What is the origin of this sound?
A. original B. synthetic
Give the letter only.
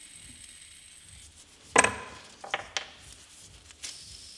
A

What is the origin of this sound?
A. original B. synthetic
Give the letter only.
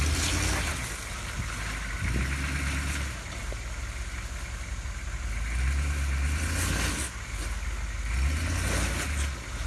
A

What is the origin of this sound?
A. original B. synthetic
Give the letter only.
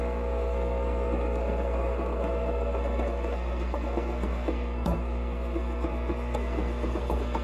B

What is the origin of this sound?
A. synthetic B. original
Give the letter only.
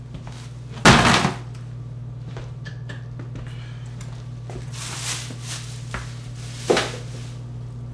B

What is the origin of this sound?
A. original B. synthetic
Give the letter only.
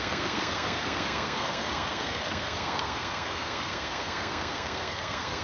B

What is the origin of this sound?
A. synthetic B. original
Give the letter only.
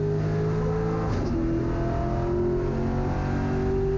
B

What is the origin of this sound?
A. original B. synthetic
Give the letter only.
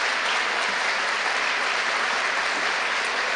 A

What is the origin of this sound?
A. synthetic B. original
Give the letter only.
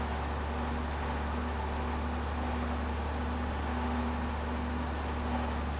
B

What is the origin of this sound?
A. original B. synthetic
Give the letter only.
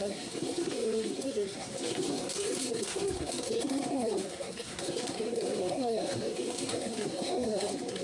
B